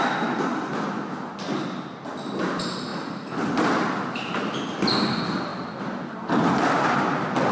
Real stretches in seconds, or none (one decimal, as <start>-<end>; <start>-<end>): 0.0-7.5